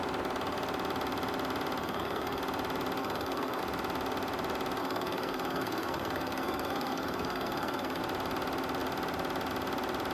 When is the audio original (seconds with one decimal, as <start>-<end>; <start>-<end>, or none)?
0.0-1.8; 2.4-3.0; 3.6-4.8; 8.0-10.1